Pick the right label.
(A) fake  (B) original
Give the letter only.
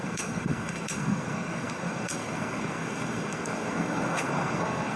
A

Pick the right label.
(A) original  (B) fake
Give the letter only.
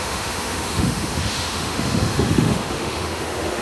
B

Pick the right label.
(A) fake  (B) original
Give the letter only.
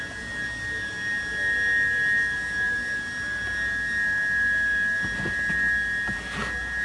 B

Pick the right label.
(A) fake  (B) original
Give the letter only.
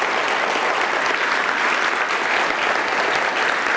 B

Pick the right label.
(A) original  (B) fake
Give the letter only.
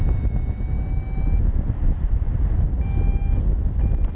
A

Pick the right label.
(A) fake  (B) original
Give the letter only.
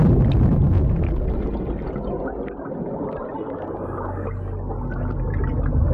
B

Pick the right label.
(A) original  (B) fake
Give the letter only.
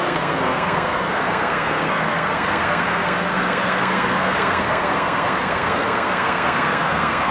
B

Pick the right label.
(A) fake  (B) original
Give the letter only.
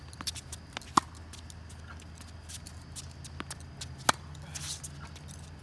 B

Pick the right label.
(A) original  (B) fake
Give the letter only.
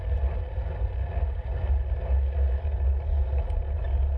A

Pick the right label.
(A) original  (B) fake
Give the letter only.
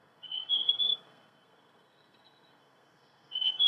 B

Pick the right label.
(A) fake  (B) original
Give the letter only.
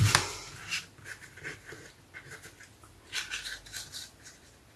B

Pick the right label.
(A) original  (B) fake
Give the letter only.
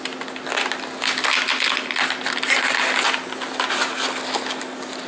A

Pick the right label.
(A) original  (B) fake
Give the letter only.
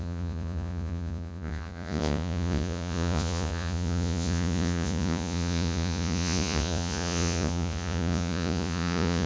B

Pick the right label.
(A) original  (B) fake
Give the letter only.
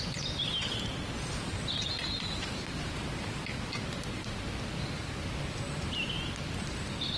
A